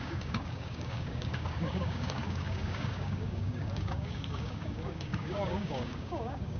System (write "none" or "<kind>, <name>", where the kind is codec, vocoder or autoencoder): codec, DAC